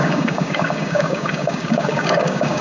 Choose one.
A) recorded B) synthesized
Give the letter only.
B